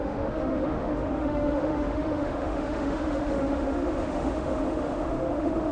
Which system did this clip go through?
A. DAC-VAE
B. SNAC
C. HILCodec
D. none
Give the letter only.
A